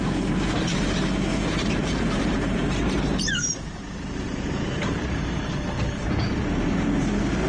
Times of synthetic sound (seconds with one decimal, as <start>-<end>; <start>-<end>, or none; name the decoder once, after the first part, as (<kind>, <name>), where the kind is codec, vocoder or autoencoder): 1.3-5.3 (vocoder, BigVGAN v2)